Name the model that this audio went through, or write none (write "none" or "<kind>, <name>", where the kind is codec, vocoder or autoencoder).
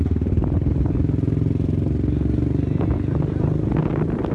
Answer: none